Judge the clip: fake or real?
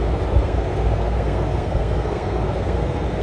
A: fake